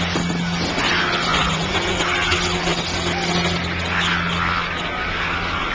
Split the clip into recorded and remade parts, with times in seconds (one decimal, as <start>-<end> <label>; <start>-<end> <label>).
0.0-1.3 recorded; 1.3-2.0 remade; 2.0-5.7 recorded